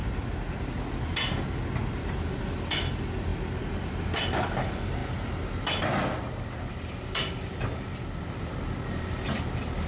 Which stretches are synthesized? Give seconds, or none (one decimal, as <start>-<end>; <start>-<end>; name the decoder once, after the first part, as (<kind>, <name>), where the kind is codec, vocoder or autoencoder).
none